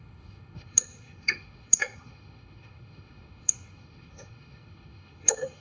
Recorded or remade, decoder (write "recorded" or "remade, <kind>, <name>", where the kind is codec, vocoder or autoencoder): remade, autoencoder, DAC-VAE